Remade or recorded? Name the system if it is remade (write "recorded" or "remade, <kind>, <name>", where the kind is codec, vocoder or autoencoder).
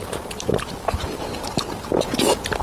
recorded